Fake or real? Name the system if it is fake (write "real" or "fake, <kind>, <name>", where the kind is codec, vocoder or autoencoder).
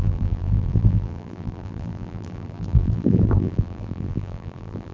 fake, vocoder, BigVGAN v2